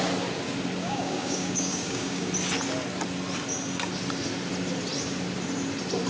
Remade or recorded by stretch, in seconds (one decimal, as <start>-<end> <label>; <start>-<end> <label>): 0.0-0.8 recorded; 0.8-2.3 remade; 2.3-6.1 recorded